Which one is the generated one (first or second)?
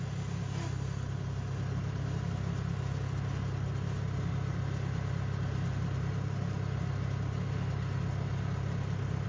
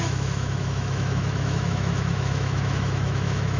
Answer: second